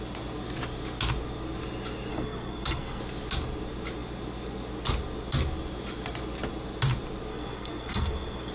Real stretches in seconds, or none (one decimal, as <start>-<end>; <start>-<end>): 0.0-2.1; 3.0-7.3